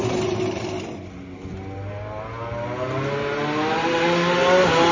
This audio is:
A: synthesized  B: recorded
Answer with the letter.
B